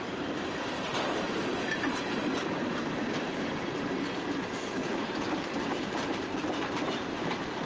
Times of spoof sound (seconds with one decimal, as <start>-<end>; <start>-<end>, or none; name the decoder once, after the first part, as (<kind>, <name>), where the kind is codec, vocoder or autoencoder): 0.9-3.3 (vocoder, BigVGAN v2); 4.8-7.7